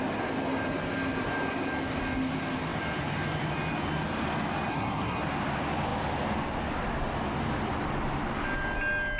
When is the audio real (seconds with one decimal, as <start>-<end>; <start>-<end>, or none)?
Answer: 0.0-4.7; 5.2-9.2